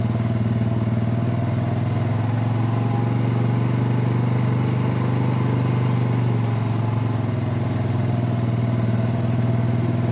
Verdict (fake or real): real